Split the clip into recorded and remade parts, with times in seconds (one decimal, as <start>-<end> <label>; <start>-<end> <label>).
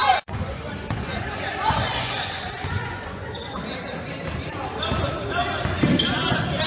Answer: 0.0-3.5 remade; 3.5-6.7 recorded